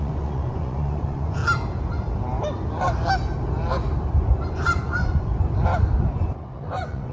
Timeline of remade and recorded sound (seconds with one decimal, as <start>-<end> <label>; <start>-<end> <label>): 0.0-1.4 remade; 1.4-4.5 recorded; 4.5-5.3 remade; 5.3-6.1 recorded; 6.1-7.1 remade